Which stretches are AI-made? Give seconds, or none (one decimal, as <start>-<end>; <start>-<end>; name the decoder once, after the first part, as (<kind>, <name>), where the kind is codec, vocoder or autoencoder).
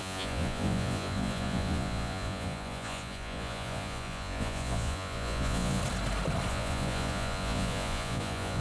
0.0-5.8 (vocoder, Vocos); 6.5-8.6